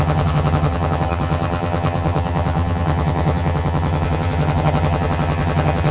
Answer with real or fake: fake